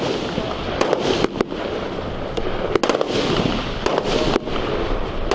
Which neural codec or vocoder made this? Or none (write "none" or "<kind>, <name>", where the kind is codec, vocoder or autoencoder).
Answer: none